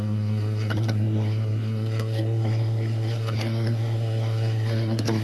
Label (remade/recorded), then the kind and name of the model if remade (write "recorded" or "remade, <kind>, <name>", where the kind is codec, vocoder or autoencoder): remade, codec, SNAC